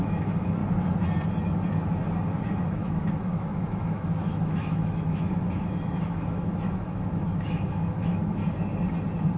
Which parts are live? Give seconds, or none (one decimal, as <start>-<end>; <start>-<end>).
0.6-2.4; 8.4-9.4